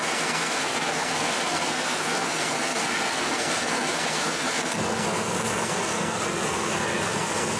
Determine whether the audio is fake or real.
fake